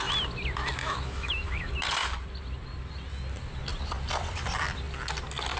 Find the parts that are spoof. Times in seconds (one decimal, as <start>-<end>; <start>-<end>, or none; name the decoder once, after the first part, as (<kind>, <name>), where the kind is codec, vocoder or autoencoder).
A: 0.8-1.7 (autoencoder, DAC-VAE)